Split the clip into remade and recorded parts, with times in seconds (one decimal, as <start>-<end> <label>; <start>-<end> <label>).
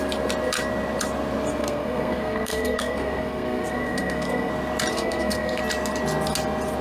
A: 0.0-1.6 recorded; 1.6-4.5 remade; 4.5-4.9 recorded; 4.9-5.6 remade; 5.6-6.8 recorded